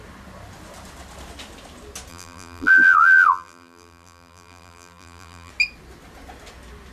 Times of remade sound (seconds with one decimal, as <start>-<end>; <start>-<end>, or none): 2.1-5.5